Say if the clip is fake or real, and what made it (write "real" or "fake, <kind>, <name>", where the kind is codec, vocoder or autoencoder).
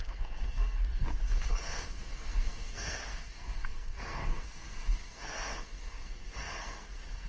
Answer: fake, codec, SNAC